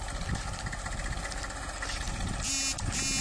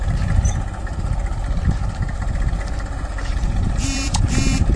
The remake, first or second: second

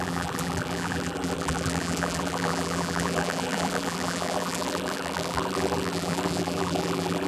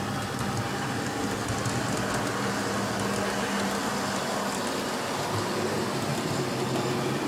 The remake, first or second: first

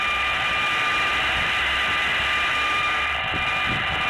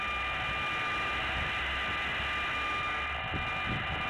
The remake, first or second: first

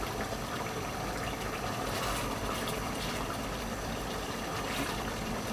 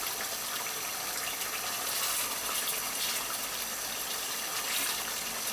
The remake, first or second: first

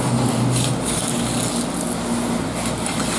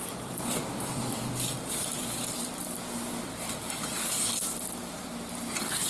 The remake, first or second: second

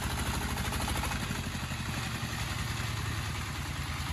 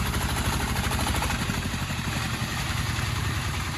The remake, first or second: second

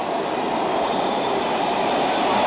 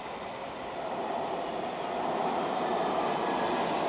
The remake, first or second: first